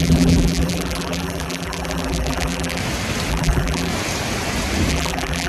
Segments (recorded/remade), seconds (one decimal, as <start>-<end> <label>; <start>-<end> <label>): 0.0-2.8 remade; 2.8-3.3 recorded; 3.3-3.9 remade; 3.9-4.9 recorded; 4.9-5.5 remade